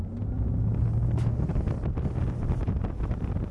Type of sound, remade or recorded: recorded